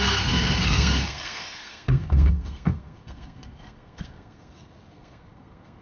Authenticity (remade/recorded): remade